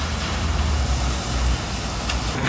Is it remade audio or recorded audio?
recorded